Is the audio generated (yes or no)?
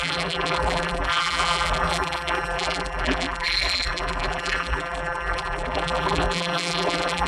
yes